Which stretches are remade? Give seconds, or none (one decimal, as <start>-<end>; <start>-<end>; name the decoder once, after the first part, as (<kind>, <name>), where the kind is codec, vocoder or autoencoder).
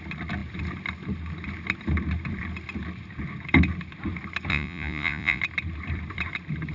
4.5-5.4 (vocoder, Vocos)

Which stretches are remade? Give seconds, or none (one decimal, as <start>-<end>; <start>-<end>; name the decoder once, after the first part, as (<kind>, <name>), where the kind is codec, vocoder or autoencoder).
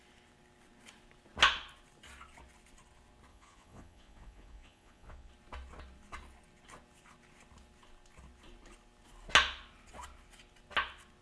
3.3-5.3 (vocoder, Vocos)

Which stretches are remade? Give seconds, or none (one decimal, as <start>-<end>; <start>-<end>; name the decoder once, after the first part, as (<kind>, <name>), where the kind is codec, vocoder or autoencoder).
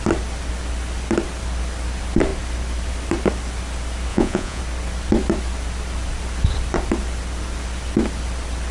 4.1-4.6 (vocoder, Vocos)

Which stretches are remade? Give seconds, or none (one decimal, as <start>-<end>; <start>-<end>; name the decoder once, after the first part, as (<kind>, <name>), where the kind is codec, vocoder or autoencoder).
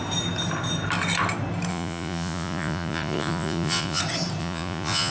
1.7-4.0 (vocoder, Vocos); 4.4-5.1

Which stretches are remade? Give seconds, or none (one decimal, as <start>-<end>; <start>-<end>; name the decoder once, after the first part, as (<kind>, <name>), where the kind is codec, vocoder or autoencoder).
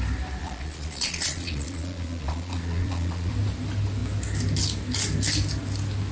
0.4-3.3 (vocoder, Vocos)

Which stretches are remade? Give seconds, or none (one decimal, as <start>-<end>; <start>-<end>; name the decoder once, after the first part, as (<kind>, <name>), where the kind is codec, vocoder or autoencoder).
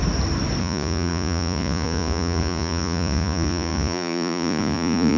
0.6-5.2 (vocoder, Vocos)